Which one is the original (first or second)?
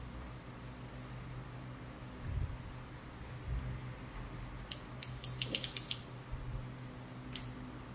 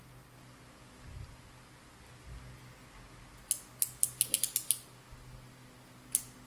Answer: second